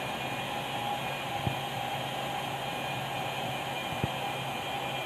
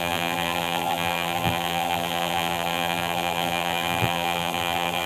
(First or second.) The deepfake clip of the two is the second